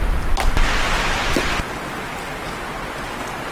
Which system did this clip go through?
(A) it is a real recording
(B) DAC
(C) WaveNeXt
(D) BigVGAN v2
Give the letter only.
A